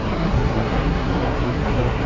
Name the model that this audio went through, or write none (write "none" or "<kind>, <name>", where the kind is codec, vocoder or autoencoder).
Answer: codec, SNAC